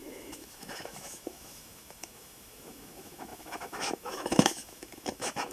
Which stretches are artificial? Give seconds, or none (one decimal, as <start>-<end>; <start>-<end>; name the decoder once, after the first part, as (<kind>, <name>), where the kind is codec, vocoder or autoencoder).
0.0-5.5 (autoencoder, DAC-VAE)